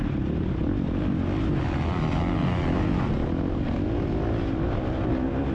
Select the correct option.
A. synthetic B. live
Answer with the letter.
B